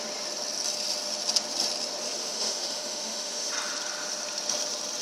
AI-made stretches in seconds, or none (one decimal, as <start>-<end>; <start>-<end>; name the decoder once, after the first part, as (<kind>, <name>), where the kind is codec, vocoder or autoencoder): 2.2-3.5 (autoencoder, DAC-VAE)